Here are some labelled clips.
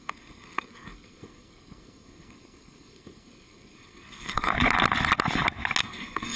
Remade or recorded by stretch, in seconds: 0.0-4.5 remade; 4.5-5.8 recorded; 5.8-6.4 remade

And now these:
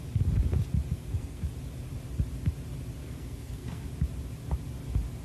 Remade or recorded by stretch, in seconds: 0.0-0.9 recorded; 0.9-1.5 remade; 1.5-3.0 recorded; 3.0-3.9 remade; 3.9-5.2 recorded

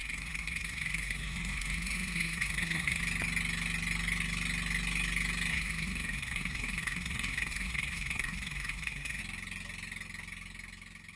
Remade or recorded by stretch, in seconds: 0.0-3.0 remade; 3.0-5.5 recorded; 5.5-9.2 remade; 9.2-11.2 recorded